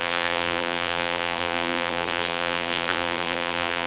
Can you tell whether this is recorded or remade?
remade